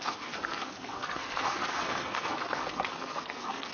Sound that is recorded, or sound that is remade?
remade